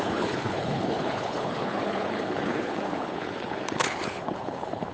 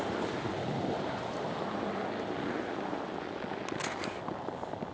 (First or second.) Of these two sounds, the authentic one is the second